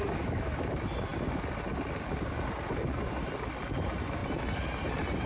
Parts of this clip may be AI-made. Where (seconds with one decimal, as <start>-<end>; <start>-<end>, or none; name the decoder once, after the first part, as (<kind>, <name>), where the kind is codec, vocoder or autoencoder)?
none